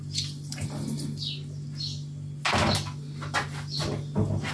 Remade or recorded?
recorded